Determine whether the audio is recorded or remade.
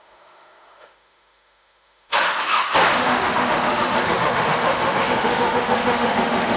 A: remade